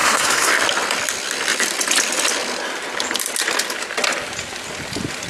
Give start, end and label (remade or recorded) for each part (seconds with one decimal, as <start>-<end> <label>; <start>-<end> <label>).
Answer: 0.0-0.5 remade; 0.5-5.3 recorded